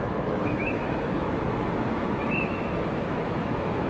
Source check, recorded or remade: remade